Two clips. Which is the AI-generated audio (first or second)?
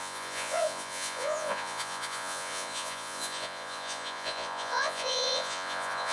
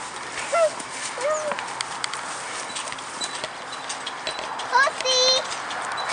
first